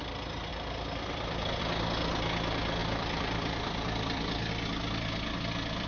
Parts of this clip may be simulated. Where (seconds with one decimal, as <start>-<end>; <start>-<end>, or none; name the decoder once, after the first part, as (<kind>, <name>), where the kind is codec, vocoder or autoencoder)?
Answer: 0.5-1.6 (vocoder, BigVGAN v2); 2.8-4.5